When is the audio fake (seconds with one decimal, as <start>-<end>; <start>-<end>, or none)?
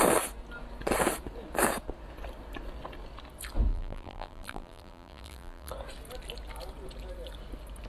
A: 3.7-5.7